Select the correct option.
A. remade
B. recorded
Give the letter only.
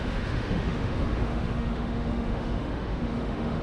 A